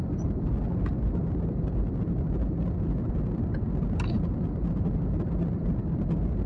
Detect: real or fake real